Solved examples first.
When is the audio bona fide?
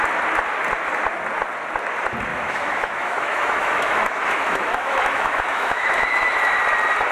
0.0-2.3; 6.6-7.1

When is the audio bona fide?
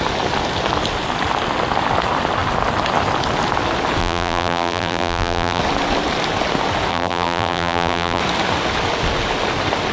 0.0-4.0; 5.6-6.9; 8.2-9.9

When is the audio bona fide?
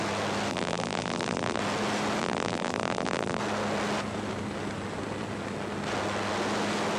0.0-0.5; 1.6-2.2; 3.4-7.0